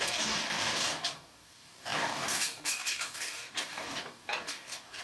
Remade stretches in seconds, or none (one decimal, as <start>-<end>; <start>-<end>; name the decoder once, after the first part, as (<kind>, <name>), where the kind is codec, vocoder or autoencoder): 0.0-5.0 (codec, DAC)